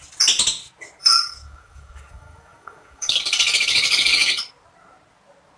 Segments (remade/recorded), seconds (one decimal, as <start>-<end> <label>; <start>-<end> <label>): 0.0-1.0 recorded; 1.0-4.4 remade; 4.4-5.6 recorded

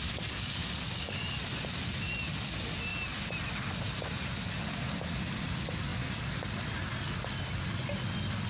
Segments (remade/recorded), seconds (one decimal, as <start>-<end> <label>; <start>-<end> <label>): 0.0-1.4 remade; 1.4-8.5 recorded